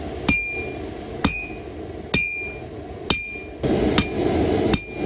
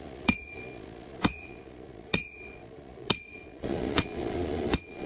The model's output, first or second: second